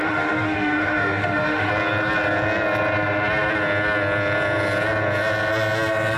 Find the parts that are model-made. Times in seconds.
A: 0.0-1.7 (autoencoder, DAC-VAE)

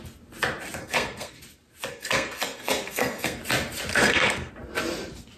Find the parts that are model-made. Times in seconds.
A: 0.8-1.4 (codec, SNAC); 1.9-3.4; 3.9-4.5

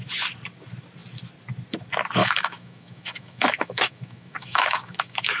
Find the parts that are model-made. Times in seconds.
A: 2.2-5.4 (autoencoder, DAC-VAE)

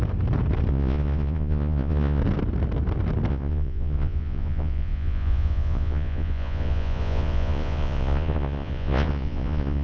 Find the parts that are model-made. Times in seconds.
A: 0.7-2.2 (vocoder, Vocos); 3.3-9.8

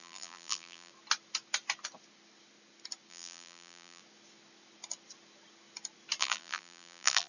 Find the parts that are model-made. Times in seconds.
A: 0.0-0.9 (vocoder, BigVGAN v2); 3.1-4.0; 6.2-7.3

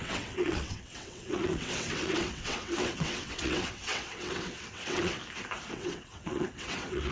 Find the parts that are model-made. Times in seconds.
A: 0.0-5.2 (vocoder, WaveNeXt); 5.7-7.1

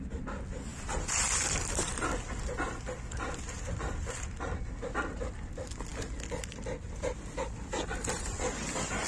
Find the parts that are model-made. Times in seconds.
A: none

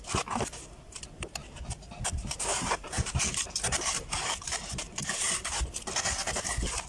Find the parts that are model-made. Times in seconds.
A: 1.4-5.5 (vocoder, BigVGAN v2)